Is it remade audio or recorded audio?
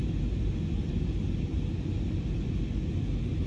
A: recorded